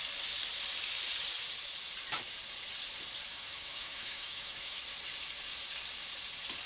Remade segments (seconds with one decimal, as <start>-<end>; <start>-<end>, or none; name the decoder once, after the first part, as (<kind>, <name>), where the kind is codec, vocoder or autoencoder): 3.3-4.8 (autoencoder, DAC-VAE)